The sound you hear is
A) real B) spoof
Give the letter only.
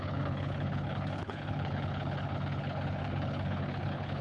B